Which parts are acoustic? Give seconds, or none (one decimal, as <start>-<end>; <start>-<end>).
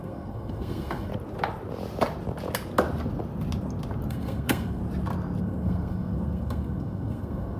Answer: 1.1-4.1; 4.8-5.4